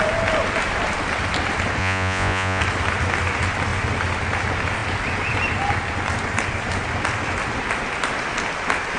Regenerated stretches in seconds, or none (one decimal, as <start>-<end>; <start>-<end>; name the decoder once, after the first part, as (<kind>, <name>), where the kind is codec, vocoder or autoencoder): 1.8-2.6 (vocoder, Vocos)